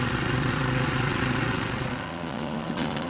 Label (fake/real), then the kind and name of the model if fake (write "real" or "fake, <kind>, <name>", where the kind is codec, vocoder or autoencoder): fake, vocoder, Vocos